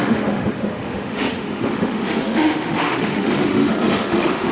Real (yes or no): no